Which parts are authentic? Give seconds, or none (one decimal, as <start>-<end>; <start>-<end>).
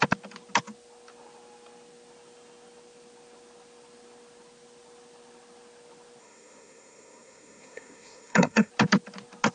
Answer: 0.0-6.2; 8.7-9.5